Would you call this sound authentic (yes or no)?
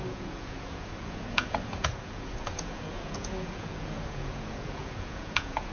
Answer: no